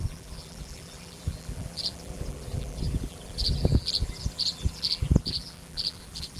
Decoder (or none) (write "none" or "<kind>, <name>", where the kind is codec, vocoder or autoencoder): vocoder, BigVGAN v2